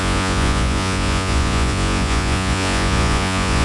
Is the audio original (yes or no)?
no